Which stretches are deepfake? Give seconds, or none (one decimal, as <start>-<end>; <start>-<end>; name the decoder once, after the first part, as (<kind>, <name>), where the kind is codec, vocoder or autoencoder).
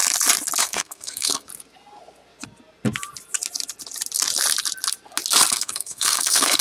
0.6-1.5 (codec, SNAC); 5.5-6.6